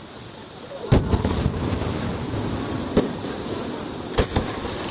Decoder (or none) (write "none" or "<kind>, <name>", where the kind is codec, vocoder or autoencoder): none